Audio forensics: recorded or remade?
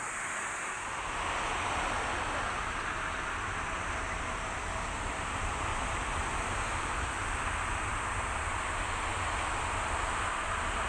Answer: recorded